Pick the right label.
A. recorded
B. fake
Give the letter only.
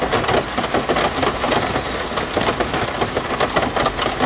A